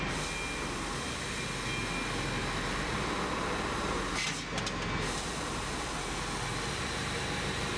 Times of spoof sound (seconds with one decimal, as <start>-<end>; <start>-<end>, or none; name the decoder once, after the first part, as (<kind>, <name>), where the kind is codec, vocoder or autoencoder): none